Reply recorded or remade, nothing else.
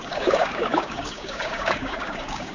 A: remade